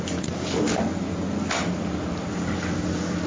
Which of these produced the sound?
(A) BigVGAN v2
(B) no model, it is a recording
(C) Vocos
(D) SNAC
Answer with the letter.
B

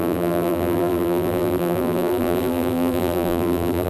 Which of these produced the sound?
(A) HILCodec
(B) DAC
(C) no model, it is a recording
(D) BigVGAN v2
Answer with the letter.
D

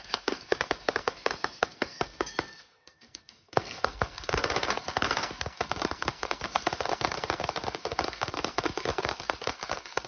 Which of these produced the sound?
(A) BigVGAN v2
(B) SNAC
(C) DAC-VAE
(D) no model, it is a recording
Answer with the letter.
B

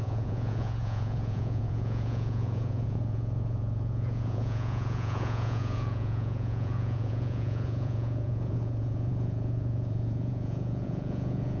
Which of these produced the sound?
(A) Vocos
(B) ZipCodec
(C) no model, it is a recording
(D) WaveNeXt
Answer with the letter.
A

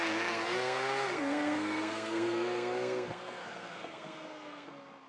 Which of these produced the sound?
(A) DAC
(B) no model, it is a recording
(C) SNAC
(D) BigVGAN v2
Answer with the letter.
C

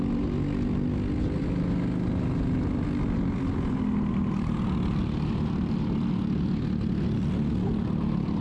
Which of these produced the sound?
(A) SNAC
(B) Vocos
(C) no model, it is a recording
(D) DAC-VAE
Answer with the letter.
C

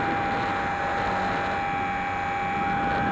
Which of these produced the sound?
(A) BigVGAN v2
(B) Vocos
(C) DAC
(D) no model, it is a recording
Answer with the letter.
D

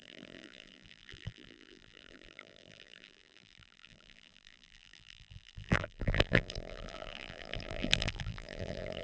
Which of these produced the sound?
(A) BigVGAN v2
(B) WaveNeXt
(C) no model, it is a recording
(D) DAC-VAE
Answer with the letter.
A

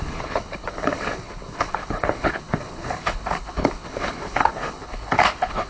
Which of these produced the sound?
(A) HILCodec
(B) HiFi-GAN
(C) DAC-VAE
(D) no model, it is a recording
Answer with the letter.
A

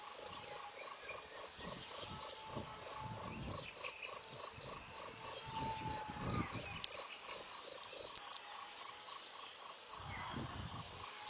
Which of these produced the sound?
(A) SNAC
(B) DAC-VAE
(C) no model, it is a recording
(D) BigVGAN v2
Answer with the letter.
C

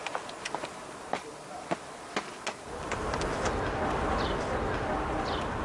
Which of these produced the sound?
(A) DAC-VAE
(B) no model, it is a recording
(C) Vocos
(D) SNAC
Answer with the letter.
B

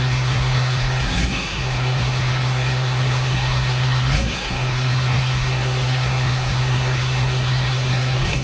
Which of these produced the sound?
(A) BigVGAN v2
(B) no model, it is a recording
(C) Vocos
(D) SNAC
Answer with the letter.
D